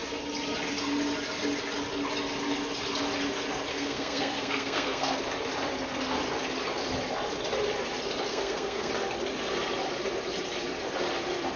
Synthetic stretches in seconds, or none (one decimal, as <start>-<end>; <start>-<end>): 3.7-5.2; 8.3-8.9